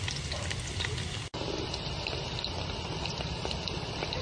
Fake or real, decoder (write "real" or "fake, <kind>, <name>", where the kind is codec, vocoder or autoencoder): real